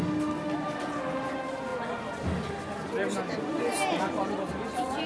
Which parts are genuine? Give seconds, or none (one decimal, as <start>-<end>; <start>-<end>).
0.0-5.1